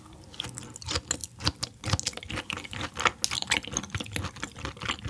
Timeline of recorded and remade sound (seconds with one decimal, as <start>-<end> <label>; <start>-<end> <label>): 0.0-5.1 recorded